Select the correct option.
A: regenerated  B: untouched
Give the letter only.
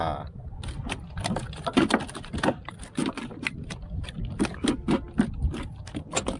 B